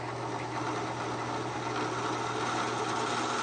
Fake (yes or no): no